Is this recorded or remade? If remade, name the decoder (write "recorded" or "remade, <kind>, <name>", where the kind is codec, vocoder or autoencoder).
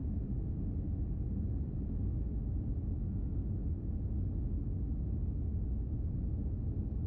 recorded